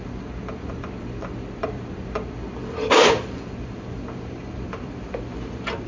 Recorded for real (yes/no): no